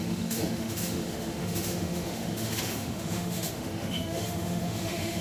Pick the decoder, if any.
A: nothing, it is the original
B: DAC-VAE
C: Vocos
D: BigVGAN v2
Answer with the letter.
B